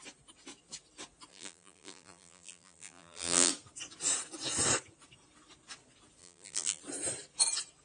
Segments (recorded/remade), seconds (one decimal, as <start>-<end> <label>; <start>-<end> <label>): 0.0-1.3 recorded; 1.3-3.5 remade; 3.5-6.2 recorded; 6.2-6.8 remade; 6.8-7.8 recorded